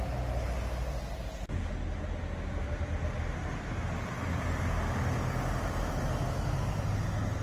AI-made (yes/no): no